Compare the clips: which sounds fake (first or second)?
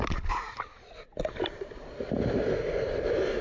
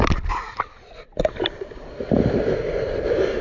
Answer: second